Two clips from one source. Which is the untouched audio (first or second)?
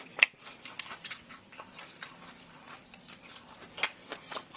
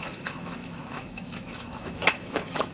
first